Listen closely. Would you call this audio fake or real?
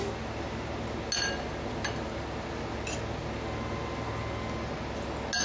real